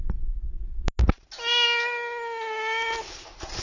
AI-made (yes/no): no